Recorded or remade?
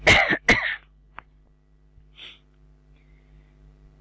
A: recorded